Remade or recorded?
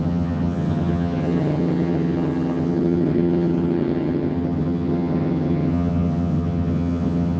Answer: remade